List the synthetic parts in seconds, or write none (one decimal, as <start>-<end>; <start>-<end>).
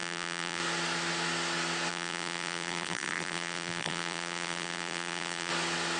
0.0-0.6; 1.9-5.5